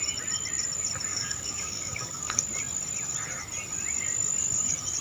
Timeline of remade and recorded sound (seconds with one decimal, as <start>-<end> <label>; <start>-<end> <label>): 0.0-1.1 recorded; 1.1-2.4 remade; 2.4-5.0 recorded